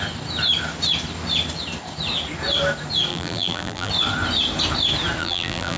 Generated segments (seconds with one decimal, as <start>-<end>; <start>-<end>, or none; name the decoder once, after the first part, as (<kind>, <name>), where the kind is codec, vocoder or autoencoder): 3.1-3.9 (vocoder, BigVGAN v2); 5.2-5.8